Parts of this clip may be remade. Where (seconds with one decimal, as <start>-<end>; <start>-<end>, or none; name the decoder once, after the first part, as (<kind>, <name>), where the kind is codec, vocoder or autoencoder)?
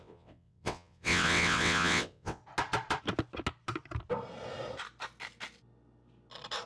0.0-2.4 (vocoder, WaveNeXt)